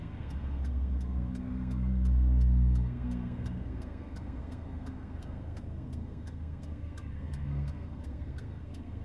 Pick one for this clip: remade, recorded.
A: remade